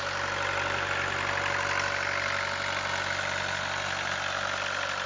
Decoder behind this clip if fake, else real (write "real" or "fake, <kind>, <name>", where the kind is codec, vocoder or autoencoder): real